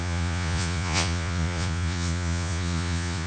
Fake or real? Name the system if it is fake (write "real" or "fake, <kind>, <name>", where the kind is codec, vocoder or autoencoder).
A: fake, vocoder, Vocos